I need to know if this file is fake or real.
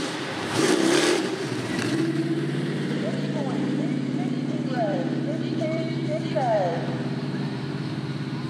fake